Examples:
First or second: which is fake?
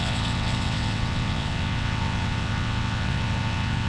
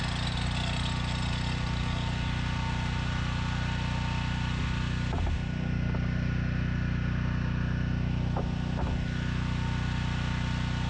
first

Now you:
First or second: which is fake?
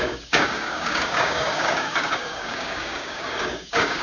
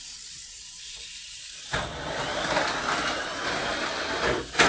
first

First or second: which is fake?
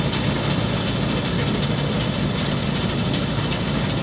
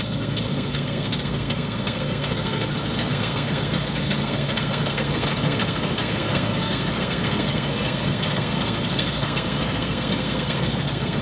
second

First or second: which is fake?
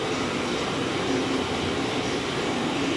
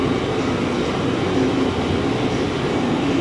first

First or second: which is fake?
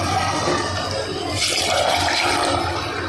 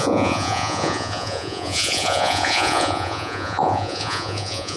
second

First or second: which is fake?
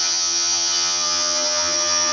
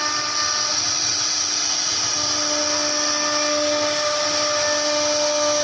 first